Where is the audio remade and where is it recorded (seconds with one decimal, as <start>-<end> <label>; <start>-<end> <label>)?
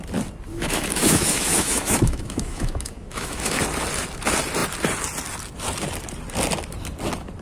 0.0-0.5 recorded; 0.5-3.6 remade; 3.6-7.4 recorded